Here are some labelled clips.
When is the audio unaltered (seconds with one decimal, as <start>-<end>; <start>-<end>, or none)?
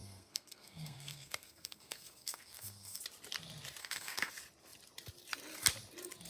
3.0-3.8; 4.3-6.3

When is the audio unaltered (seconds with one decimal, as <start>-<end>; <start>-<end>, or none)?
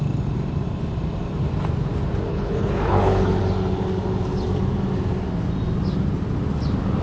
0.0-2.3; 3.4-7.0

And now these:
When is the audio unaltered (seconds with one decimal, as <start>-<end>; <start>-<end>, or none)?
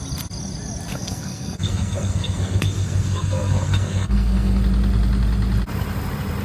0.0-0.9; 4.6-6.4